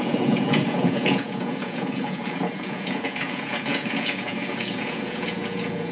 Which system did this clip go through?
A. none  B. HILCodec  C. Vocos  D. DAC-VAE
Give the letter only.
C